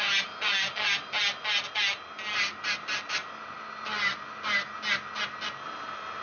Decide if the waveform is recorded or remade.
recorded